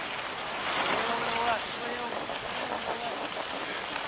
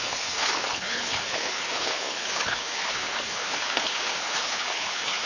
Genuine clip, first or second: first